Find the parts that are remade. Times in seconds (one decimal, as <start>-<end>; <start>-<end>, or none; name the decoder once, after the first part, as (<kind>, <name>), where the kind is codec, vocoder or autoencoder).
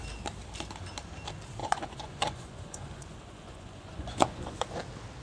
1.6-4.7 (vocoder, Vocos)